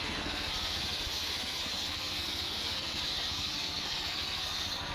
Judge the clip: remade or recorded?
remade